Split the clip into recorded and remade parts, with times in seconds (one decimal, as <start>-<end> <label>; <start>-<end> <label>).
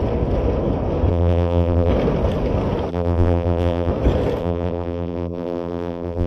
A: 0.0-1.1 recorded; 1.1-1.9 remade; 1.9-2.9 recorded; 2.9-3.9 remade; 3.9-4.4 recorded; 4.4-6.3 remade